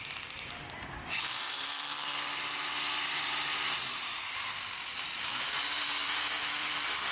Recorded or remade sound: remade